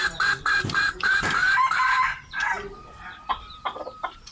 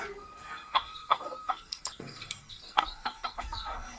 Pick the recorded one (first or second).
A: first